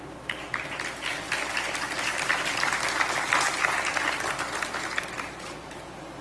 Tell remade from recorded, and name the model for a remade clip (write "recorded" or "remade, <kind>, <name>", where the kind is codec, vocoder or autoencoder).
recorded